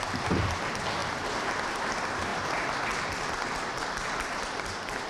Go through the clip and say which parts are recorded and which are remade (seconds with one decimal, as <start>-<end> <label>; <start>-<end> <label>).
0.0-1.0 recorded; 1.0-1.9 remade; 1.9-2.3 recorded; 2.3-3.9 remade; 3.9-5.1 recorded